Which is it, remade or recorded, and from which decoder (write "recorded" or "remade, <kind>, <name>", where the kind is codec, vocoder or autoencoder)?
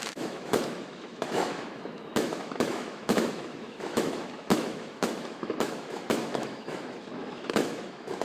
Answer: remade, autoencoder, DAC-VAE